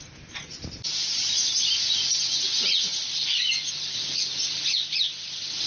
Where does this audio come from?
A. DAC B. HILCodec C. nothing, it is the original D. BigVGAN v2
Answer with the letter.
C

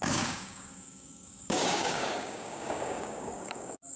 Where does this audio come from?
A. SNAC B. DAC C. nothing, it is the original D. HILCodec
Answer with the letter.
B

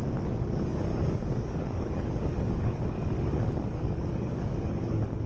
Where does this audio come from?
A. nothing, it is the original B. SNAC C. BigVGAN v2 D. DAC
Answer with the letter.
D